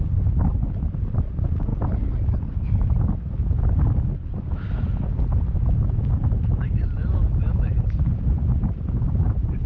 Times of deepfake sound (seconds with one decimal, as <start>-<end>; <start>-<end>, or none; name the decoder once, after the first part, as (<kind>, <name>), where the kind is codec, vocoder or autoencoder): 0.0-1.7 (vocoder, BigVGAN v2); 6.2-9.7